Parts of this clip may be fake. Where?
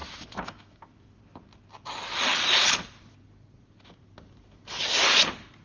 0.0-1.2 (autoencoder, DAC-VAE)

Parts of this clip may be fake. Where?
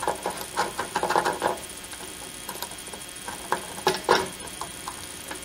0.0-5.4 (vocoder, BigVGAN v2)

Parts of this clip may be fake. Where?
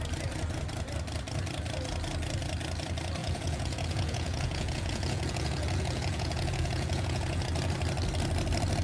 3.2-7.4 (vocoder, Vocos)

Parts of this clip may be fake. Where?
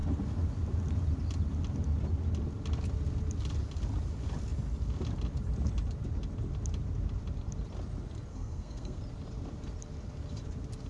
8.3-9.0 (codec, SNAC)